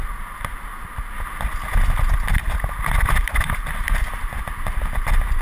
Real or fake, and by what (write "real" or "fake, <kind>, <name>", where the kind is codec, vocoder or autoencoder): real